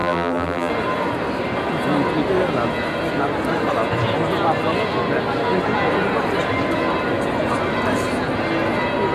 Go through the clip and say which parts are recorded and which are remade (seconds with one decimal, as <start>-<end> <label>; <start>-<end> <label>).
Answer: 0.0-0.7 remade; 0.7-9.1 recorded